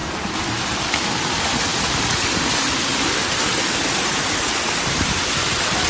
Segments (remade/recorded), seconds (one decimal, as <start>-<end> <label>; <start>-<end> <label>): 0.0-5.9 recorded

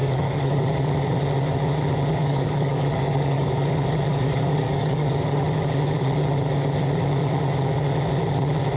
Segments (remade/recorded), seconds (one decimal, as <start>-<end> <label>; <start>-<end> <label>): 0.0-0.6 remade; 0.6-2.2 recorded; 2.2-3.5 remade; 3.5-4.1 recorded; 4.1-5.4 remade; 5.4-8.8 recorded

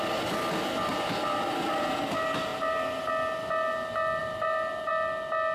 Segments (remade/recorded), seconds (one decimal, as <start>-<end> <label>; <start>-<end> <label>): 0.0-2.5 recorded; 2.5-3.1 remade; 3.1-4.2 recorded; 4.2-4.9 remade; 4.9-5.5 recorded

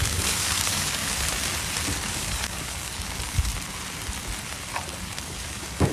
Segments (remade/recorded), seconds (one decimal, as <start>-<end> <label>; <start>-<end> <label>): 0.0-1.0 remade; 1.0-2.1 recorded; 2.1-3.5 remade; 3.5-5.0 recorded; 5.0-5.9 remade

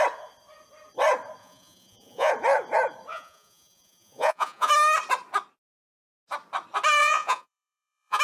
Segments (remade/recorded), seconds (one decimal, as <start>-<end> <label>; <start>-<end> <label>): 0.0-1.4 recorded; 1.4-2.3 remade; 2.3-3.1 recorded; 3.1-4.7 remade; 4.7-7.0 recorded; 7.0-8.2 remade

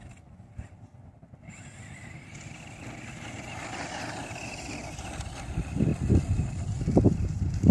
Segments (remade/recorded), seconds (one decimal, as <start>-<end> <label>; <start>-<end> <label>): 0.0-7.7 recorded

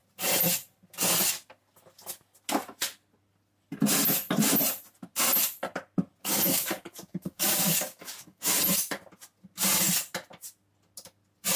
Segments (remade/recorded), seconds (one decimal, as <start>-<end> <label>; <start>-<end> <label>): 0.0-6.2 recorded; 6.2-8.4 remade; 8.4-11.6 recorded

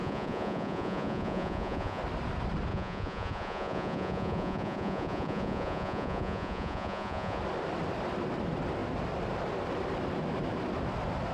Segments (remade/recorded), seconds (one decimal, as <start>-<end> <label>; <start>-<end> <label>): 0.0-2.0 remade; 2.0-2.7 recorded; 2.7-7.4 remade; 7.4-11.3 recorded